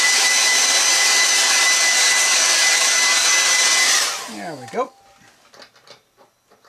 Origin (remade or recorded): recorded